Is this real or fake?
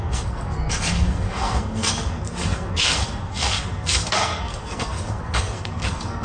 fake